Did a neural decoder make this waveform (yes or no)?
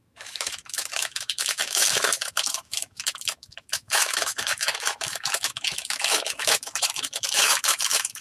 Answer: yes